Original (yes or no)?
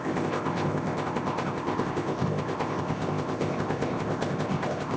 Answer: no